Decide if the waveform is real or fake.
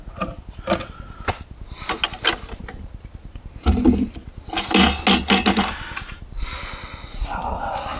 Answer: real